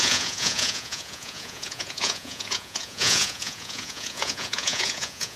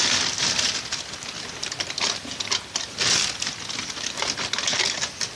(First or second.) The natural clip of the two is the second